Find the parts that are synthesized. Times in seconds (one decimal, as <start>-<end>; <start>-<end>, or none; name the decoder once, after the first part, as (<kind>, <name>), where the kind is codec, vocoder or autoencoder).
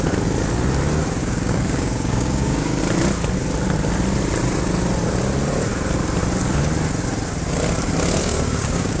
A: 1.2-2.8 (codec, DAC); 8.2-9.0